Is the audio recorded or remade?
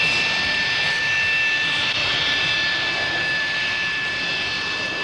recorded